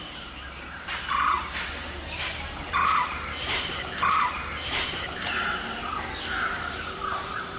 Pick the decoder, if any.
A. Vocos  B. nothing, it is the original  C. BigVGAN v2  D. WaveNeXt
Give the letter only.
C